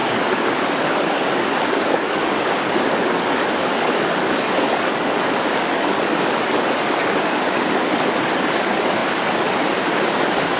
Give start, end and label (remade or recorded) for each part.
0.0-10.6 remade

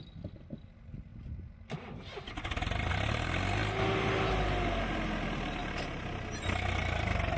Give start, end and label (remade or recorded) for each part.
0.0-5.6 recorded; 5.6-6.4 remade; 6.4-7.4 recorded

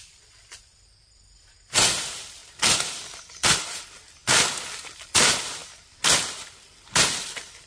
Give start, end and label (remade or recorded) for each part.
0.0-2.4 remade; 2.4-3.2 recorded; 3.2-4.2 remade; 4.2-4.7 recorded; 4.7-5.6 remade; 5.6-7.7 recorded

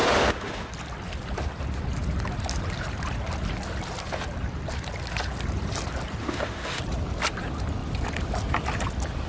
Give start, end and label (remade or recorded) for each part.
0.0-0.7 remade; 0.7-6.2 recorded; 6.2-6.8 remade; 6.8-9.3 recorded

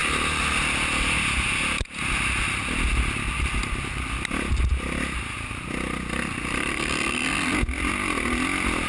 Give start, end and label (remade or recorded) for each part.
0.0-8.9 recorded

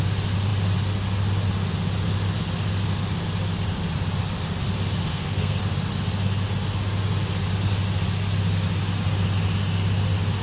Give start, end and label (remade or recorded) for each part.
0.0-5.1 recorded; 5.1-5.6 remade; 5.6-10.4 recorded

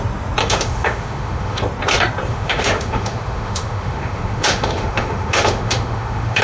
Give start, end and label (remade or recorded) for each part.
0.0-0.4 recorded; 0.4-1.6 remade; 1.6-2.3 recorded; 2.3-6.4 remade

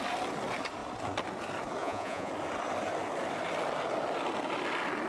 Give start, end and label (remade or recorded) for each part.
0.0-1.8 recorded; 1.8-2.3 remade; 2.3-5.1 recorded